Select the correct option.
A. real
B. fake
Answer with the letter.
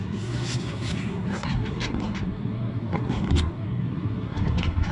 B